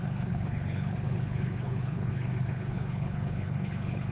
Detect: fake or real fake